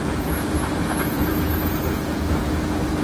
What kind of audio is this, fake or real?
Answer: fake